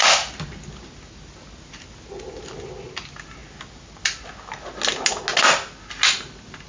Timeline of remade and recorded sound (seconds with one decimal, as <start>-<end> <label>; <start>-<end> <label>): 0.0-6.7 recorded